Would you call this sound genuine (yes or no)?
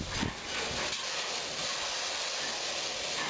yes